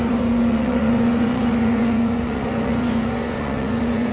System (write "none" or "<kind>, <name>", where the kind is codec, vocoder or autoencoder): vocoder, Vocos